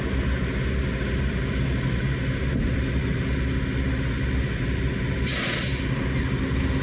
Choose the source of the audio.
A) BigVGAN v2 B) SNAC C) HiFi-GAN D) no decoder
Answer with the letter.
D